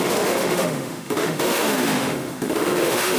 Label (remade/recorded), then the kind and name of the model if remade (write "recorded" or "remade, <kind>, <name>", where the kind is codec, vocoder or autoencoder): remade, autoencoder, DAC-VAE